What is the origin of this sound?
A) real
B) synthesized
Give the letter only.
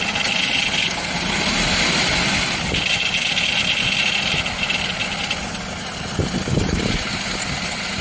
A